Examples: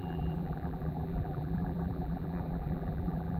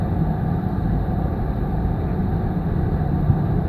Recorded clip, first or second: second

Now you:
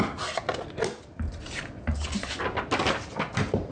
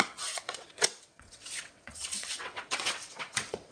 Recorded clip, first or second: first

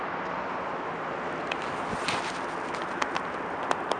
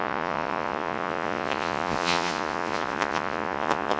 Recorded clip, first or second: first